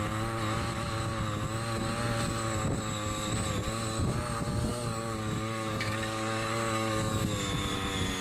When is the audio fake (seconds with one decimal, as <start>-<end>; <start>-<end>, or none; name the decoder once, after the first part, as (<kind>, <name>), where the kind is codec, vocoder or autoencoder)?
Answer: 4.7-7.2 (codec, DAC)